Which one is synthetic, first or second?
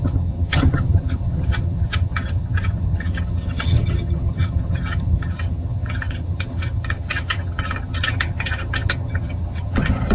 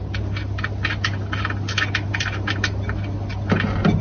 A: first